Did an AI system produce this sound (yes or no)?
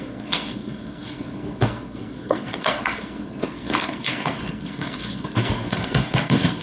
yes